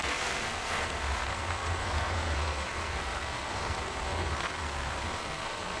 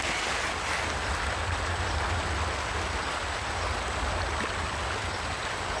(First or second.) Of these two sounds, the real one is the second